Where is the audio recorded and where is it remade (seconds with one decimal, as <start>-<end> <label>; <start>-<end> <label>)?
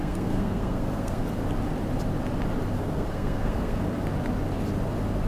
0.0-1.2 remade; 1.2-2.8 recorded; 2.8-3.8 remade; 3.8-5.3 recorded